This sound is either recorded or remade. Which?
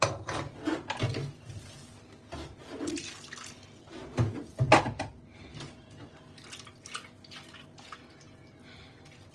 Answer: recorded